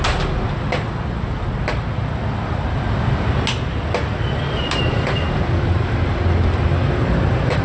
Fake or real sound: real